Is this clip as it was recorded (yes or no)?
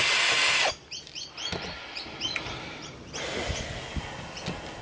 yes